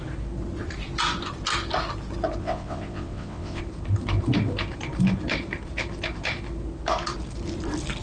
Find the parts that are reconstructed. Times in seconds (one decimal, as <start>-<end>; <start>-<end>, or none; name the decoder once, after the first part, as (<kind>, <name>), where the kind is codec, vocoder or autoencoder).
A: 2.4-3.6 (vocoder, WaveNeXt)